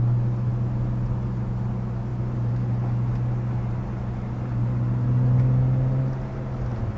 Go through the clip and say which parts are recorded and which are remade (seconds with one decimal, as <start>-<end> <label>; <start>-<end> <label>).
0.0-7.0 recorded